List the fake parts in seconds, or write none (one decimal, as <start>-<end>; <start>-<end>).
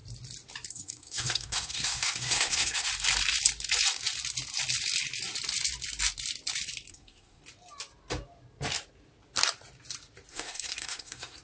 0.7-2.9; 6.9-7.4; 10.3-11.4